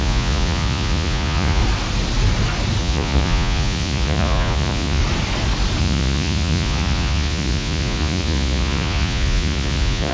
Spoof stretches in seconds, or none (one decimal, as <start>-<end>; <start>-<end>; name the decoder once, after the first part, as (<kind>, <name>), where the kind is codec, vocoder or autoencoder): 0.0-1.6 (vocoder, Vocos); 2.8-5.0; 5.8-10.1

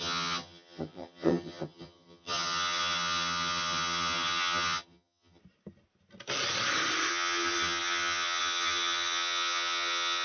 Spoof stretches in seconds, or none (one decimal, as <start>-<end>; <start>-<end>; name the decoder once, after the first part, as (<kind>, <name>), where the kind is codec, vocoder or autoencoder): 0.0-5.4 (vocoder, HiFi-GAN); 7.1-10.2

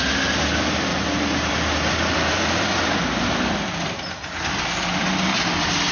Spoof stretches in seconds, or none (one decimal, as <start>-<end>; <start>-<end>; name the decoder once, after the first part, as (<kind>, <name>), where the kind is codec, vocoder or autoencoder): 0.9-3.6 (vocoder, BigVGAN v2)

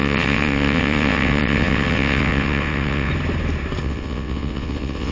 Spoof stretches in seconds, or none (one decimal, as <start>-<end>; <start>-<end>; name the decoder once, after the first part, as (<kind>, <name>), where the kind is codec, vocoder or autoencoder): 0.0-3.1 (vocoder, WaveNeXt); 3.8-5.1

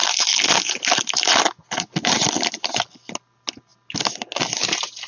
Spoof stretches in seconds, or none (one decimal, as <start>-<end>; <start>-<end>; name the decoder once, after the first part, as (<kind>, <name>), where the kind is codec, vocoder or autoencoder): none

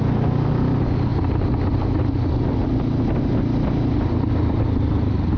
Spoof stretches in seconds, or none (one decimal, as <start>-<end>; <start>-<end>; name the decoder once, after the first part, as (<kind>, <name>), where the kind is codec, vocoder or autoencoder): none

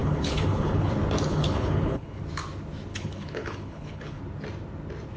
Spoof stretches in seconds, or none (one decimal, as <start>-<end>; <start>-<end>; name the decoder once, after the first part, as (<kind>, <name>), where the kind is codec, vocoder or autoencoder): 0.0-0.9 (codec, HILCodec); 1.3-2.2; 2.9-4.2

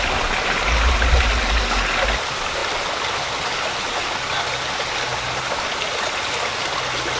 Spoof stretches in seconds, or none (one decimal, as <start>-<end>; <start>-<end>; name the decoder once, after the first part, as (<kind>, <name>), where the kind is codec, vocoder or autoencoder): none